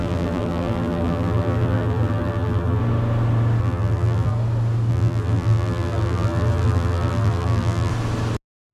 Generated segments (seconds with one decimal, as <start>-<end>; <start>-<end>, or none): 0.0-2.8; 3.6-4.3; 4.9-7.9